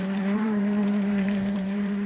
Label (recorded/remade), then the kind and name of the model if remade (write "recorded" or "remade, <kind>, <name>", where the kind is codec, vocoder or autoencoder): remade, vocoder, BigVGAN v2